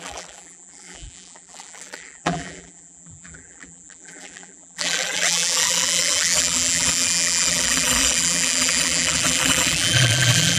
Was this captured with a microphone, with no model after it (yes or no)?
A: no